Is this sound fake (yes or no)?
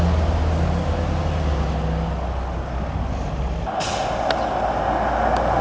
no